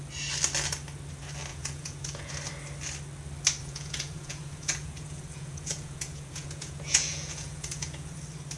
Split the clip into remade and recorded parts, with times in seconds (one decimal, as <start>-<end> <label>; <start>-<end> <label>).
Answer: 0.0-1.5 recorded; 1.5-2.3 remade; 2.3-3.6 recorded; 3.6-8.2 remade; 8.2-8.6 recorded